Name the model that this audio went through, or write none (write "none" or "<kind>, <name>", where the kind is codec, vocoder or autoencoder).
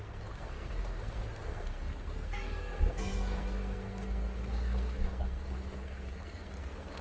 codec, SNAC